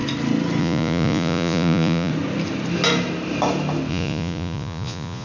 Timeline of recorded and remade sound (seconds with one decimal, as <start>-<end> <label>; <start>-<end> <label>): 0.0-0.6 recorded; 0.6-2.1 remade; 2.1-3.9 recorded; 3.9-5.2 remade